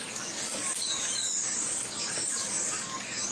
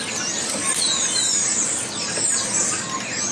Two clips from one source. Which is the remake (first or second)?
first